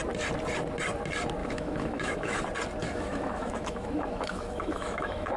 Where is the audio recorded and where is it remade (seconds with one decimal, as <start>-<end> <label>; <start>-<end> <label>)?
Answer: 0.0-1.4 recorded; 1.4-2.4 remade; 2.4-2.8 recorded; 2.8-5.4 remade